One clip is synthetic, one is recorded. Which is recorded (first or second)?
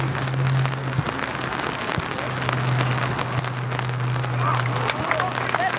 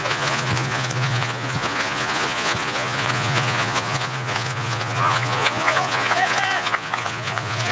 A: first